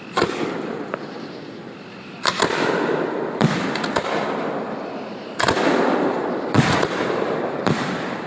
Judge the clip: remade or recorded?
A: remade